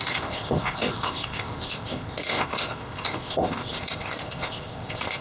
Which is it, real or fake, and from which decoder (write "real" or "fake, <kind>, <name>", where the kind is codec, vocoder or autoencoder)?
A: fake, codec, ZipCodec